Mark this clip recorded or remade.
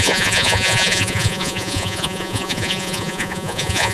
remade